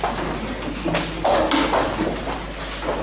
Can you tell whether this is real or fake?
real